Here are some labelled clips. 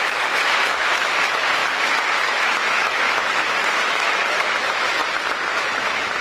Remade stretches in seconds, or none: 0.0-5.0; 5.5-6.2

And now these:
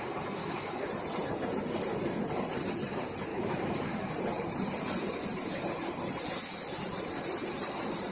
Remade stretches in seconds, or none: 0.4-0.9; 3.3-4.1

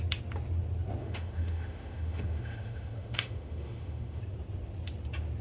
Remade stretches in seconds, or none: 1.0-4.2